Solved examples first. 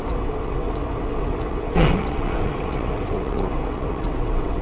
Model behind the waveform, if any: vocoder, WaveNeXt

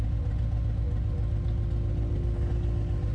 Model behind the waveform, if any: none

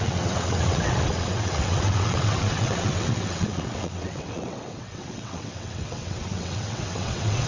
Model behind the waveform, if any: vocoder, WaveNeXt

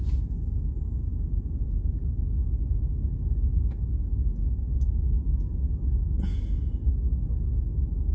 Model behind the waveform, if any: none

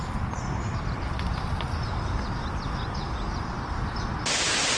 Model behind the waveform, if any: none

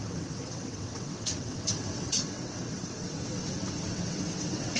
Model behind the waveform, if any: vocoder, WaveNeXt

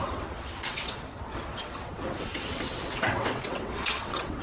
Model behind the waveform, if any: vocoder, WaveNeXt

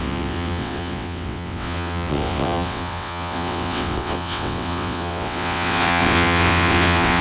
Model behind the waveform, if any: vocoder, WaveNeXt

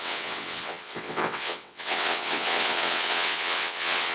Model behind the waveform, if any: vocoder, WaveNeXt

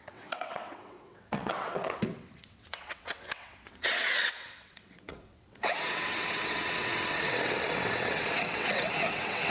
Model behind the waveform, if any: vocoder, WaveNeXt